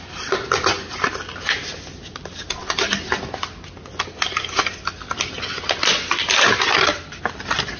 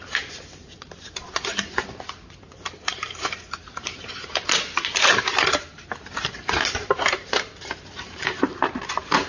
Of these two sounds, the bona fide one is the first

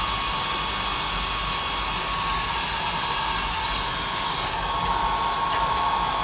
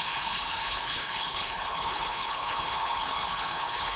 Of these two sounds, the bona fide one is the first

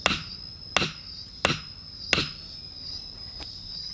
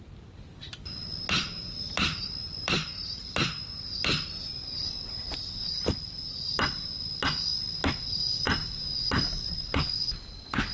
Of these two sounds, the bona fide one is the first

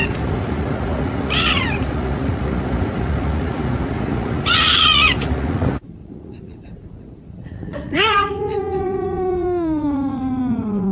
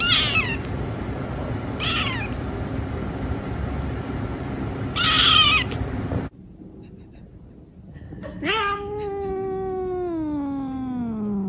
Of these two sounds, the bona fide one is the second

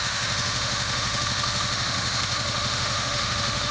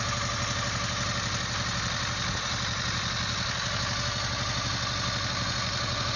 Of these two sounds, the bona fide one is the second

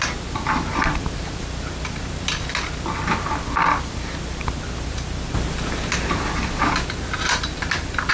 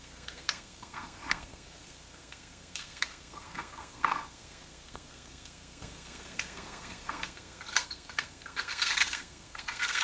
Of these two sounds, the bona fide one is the first